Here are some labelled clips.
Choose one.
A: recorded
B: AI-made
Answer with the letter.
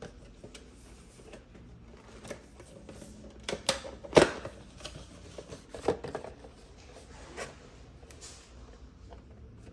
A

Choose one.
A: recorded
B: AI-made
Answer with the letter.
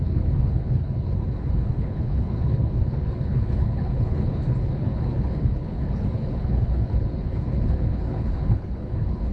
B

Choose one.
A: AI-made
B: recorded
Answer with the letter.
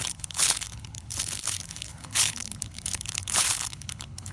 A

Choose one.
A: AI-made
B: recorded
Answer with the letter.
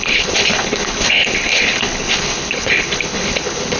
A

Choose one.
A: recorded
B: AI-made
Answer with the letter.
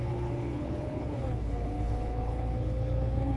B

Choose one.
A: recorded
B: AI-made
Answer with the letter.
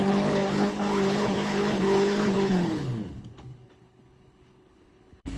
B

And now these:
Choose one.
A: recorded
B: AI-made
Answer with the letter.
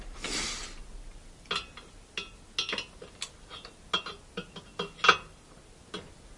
A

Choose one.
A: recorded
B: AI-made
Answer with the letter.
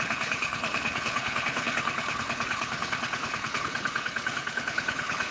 B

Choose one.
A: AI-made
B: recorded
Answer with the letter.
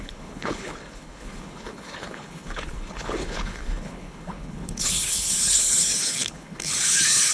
A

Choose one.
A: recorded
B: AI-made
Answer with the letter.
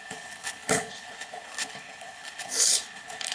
B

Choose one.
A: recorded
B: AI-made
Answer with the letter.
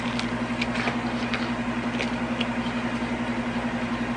A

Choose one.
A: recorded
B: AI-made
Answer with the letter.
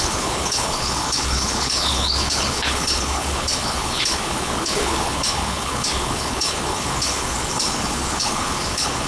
B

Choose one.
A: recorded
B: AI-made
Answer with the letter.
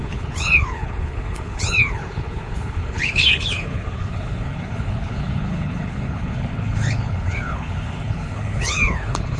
B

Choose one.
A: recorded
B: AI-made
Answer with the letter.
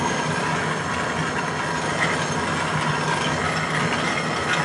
A